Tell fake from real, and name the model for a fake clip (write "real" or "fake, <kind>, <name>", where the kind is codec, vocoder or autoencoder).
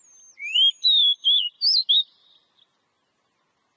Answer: real